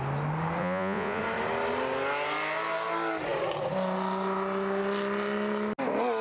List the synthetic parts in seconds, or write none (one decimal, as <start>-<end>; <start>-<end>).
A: 0.6-1.2